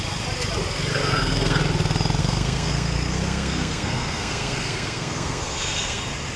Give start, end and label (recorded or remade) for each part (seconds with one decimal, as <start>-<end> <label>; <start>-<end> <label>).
0.0-0.9 recorded; 0.9-1.6 remade; 1.6-2.2 recorded; 2.2-6.0 remade; 6.0-6.4 recorded